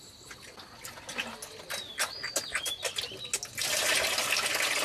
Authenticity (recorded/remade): recorded